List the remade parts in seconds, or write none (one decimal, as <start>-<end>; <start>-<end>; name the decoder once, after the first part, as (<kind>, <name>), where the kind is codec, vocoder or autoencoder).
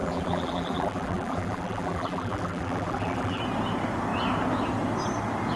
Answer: 0.0-3.4 (vocoder, BigVGAN v2)